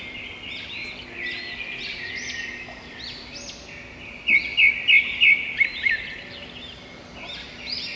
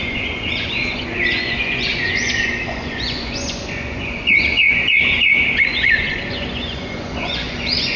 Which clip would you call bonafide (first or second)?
first